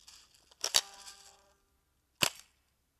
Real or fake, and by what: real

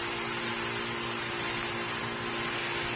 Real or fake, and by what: real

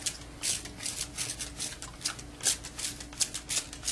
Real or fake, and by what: real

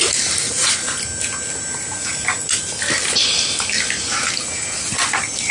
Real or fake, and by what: real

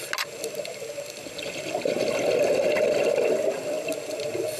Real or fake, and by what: real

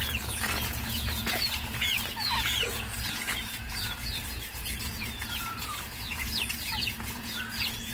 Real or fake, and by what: fake, vocoder, Vocos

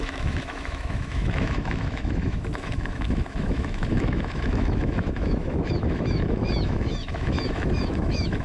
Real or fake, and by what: fake, autoencoder, DAC-VAE